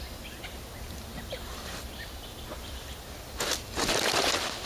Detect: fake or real real